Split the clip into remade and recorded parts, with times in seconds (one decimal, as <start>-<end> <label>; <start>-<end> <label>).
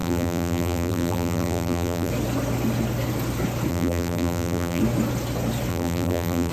0.0-2.1 remade; 2.1-3.7 recorded; 3.7-4.8 remade; 4.8-5.7 recorded; 5.7-6.5 remade